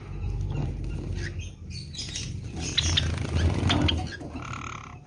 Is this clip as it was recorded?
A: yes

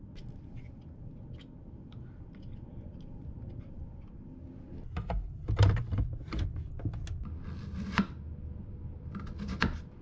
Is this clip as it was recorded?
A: yes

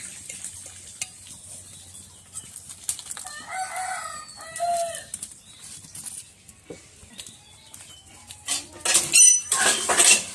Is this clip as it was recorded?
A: yes